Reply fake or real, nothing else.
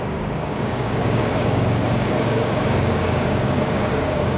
fake